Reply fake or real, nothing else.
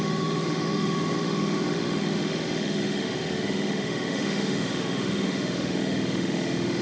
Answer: fake